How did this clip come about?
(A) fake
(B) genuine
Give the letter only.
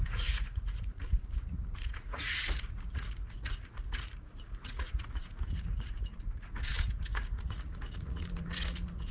A